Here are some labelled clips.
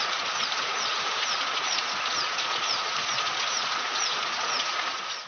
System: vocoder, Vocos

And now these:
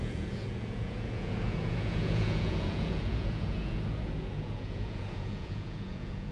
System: vocoder, Vocos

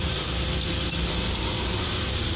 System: none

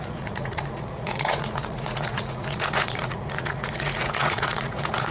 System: vocoder, Vocos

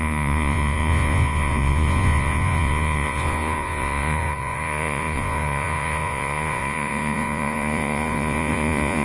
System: vocoder, Vocos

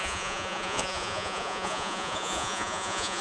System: vocoder, Vocos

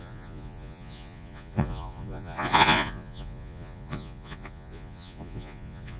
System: vocoder, Vocos